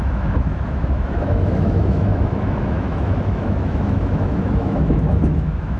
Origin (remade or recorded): remade